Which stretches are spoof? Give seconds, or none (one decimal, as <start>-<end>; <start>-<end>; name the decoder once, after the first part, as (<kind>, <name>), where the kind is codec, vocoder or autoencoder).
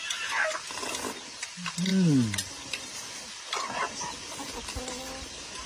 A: none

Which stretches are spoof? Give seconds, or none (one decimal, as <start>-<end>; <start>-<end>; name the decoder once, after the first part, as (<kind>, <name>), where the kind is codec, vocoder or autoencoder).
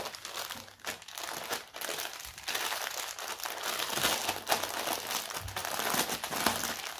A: none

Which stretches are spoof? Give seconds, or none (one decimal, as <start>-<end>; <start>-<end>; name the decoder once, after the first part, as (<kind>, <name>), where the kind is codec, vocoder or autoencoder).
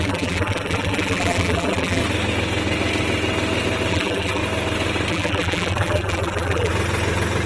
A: 0.0-2.0 (vocoder, BigVGAN v2); 3.9-4.4; 5.1-6.7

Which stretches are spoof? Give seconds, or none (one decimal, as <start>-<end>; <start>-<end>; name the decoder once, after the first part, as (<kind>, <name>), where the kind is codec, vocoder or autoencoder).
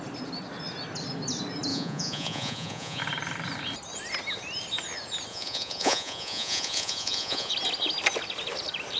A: 1.7-3.0 (vocoder, Vocos); 5.3-7.5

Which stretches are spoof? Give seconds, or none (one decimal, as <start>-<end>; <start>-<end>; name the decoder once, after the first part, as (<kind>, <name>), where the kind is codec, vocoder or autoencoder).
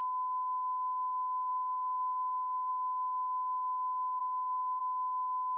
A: 1.5-2.7 (codec, SNAC); 4.2-4.8